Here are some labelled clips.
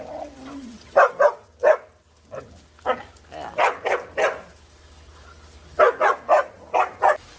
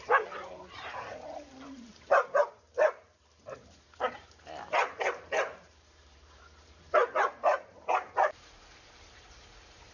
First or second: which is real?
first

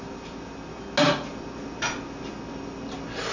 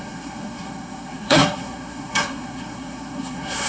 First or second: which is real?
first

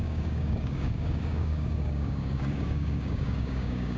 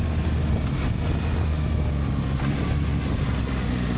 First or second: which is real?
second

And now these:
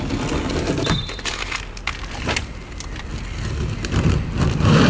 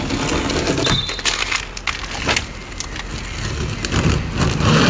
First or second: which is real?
second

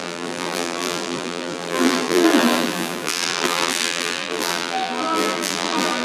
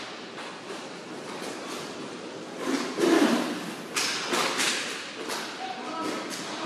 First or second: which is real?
second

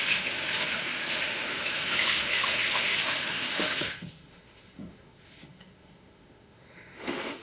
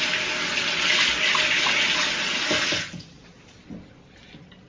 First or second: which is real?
second